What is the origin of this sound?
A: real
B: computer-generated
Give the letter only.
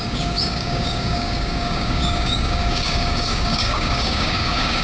B